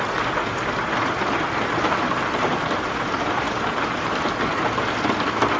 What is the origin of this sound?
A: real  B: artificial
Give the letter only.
A